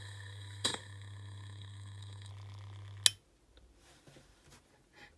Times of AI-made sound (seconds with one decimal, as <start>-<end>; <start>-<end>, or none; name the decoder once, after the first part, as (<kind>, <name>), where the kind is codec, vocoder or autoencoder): 0.0-2.3 (codec, SNAC)